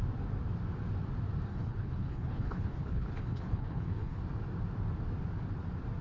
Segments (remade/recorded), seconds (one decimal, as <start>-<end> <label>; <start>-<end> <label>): 0.0-1.5 recorded; 1.5-4.2 remade; 4.2-6.0 recorded